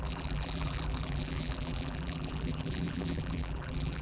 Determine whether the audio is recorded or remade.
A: remade